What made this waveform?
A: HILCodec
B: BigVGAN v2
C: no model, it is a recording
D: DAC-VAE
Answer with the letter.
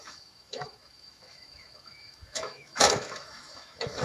D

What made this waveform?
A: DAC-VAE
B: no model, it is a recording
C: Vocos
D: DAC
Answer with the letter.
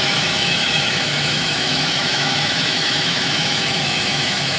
A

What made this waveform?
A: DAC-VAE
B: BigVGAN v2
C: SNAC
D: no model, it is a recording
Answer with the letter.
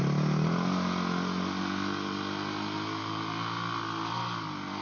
D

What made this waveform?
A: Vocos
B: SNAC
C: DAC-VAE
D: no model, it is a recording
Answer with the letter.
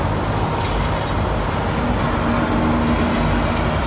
D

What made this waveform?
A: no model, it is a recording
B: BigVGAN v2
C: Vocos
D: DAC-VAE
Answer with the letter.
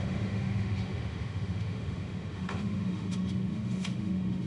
D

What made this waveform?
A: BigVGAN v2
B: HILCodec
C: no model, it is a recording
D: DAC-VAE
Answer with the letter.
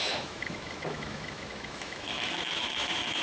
D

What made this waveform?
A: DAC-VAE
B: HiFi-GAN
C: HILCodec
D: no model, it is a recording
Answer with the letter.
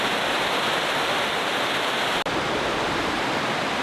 D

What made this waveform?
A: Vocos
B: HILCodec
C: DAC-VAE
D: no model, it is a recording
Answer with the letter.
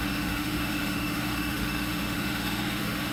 C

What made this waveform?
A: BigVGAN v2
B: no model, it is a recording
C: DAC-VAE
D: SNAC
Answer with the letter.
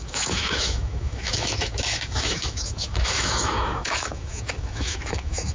C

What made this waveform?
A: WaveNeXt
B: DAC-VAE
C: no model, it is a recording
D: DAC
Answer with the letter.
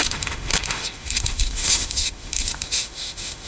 B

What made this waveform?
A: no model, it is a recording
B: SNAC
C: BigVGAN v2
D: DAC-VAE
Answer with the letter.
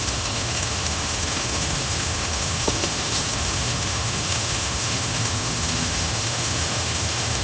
D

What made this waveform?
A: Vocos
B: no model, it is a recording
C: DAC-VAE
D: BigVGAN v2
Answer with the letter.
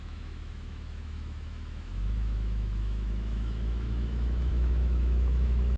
C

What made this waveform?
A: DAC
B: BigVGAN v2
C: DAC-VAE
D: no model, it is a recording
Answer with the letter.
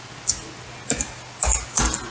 D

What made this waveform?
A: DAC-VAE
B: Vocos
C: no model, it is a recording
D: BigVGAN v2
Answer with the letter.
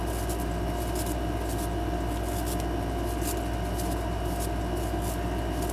C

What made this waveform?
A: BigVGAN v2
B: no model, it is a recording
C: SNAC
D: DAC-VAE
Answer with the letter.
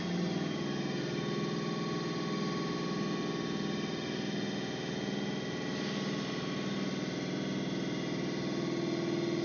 B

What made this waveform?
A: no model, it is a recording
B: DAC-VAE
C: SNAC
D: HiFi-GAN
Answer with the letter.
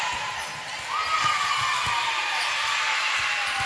A